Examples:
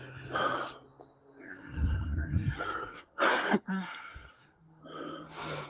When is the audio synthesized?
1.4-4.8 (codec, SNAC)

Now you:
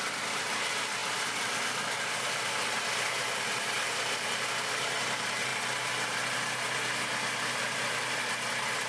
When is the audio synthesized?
none

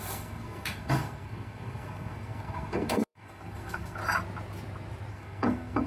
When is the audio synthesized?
0.0-4.0 (codec, SNAC); 5.1-5.9

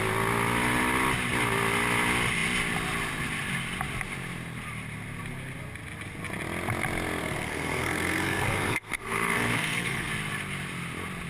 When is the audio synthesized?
7.2-10.1 (codec, SNAC)

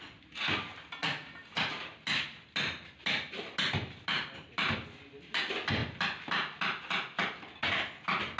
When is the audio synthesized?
none